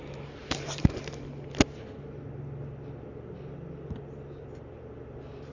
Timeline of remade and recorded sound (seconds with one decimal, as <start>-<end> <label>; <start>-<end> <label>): 0.0-0.4 recorded; 0.4-1.0 remade; 1.0-5.5 recorded